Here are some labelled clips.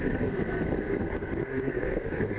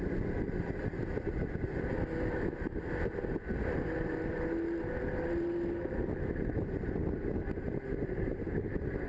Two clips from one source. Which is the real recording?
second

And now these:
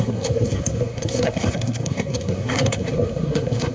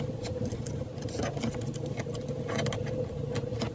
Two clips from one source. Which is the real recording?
second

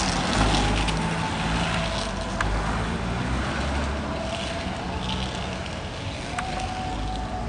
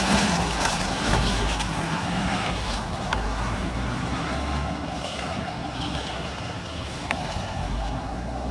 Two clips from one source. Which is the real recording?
first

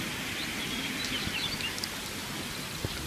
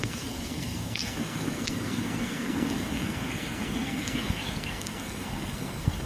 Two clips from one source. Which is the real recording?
first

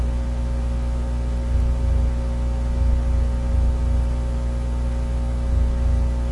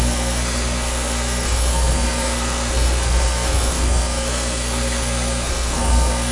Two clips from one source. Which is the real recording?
first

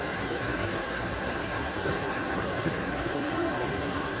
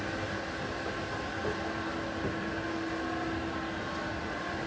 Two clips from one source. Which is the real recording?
second